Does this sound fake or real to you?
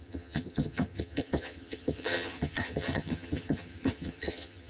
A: fake